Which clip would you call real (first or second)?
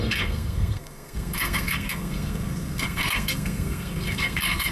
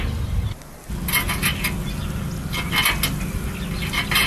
second